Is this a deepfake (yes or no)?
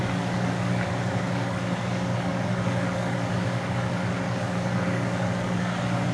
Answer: yes